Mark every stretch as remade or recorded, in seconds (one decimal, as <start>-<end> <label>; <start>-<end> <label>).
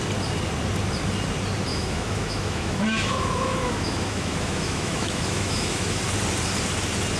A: 0.0-1.7 recorded; 1.7-6.0 remade; 6.0-7.2 recorded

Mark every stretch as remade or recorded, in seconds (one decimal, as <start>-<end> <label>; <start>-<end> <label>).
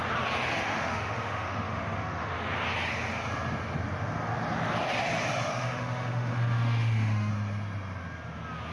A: 0.0-0.5 recorded; 0.5-2.5 remade; 2.5-5.5 recorded; 5.5-7.3 remade; 7.3-8.7 recorded